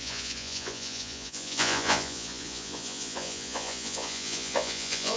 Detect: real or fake fake